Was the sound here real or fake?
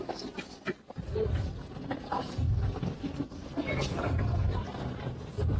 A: real